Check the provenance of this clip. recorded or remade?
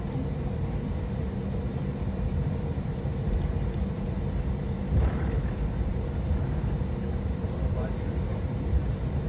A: remade